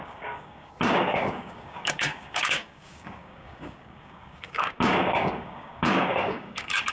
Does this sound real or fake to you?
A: fake